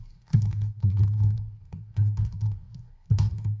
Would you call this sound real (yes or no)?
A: no